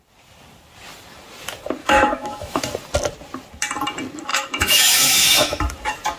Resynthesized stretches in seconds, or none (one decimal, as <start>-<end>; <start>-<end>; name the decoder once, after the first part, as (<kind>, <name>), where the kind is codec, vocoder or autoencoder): 1.8-2.6 (autoencoder, DAC-VAE); 4.3-5.6